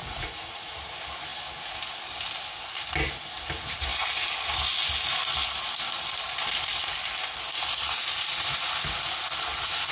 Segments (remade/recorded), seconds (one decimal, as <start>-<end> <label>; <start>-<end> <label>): 0.0-0.7 remade; 0.7-9.9 recorded